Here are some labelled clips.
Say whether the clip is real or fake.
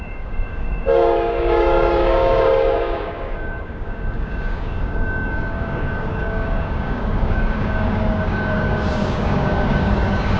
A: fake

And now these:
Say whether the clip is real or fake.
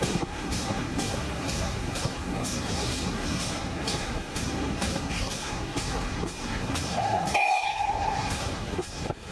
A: fake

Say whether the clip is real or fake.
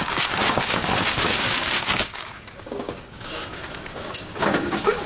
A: fake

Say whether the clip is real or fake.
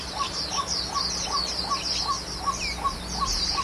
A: real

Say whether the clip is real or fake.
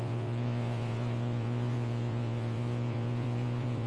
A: fake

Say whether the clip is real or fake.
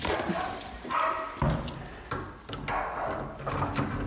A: real